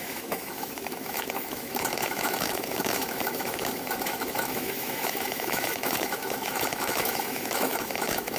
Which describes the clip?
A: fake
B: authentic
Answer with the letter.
A